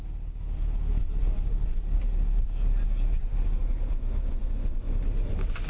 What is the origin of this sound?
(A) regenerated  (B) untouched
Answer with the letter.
B